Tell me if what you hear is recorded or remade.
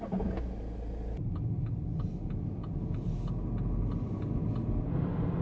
recorded